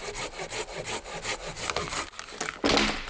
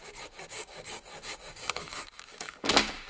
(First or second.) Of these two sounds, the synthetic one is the second